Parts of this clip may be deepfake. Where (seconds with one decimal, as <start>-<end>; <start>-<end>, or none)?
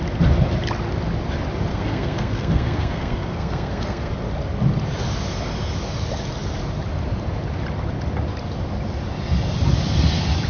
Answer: 1.7-4.1